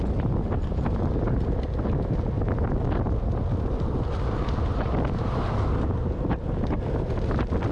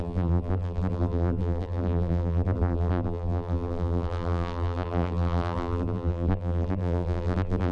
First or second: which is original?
first